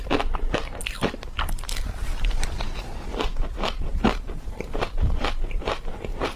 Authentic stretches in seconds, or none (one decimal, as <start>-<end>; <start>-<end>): 0.0-3.9; 5.2-6.4